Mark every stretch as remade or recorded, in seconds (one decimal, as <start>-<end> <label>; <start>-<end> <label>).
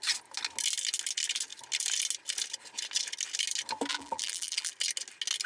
0.0-3.9 recorded; 3.9-4.7 remade; 4.7-5.5 recorded